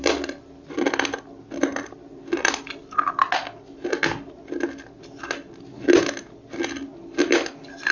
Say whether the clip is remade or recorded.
recorded